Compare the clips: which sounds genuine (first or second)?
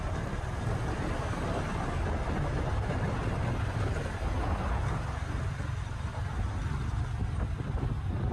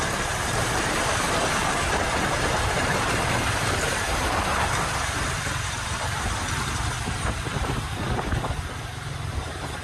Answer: first